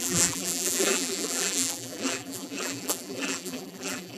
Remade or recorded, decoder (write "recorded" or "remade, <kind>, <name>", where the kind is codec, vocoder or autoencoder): remade, vocoder, BigVGAN v2